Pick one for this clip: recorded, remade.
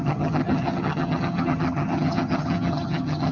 remade